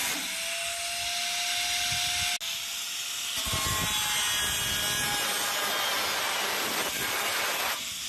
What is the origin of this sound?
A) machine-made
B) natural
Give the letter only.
B